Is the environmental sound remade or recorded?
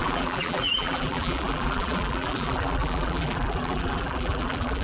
remade